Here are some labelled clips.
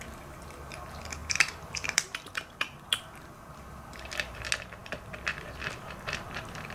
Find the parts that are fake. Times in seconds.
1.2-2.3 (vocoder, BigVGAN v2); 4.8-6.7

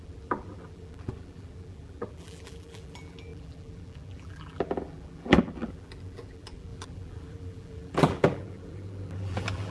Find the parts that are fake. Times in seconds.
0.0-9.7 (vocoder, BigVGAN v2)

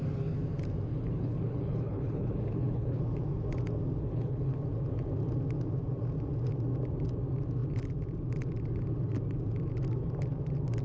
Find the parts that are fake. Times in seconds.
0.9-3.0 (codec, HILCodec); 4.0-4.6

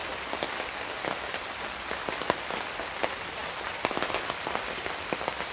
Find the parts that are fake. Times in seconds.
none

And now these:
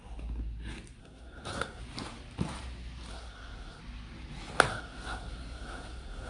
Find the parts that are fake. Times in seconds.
1.0-1.8 (codec, SNAC); 3.1-3.8; 4.7-6.3